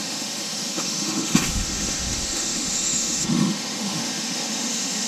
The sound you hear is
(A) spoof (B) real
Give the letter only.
A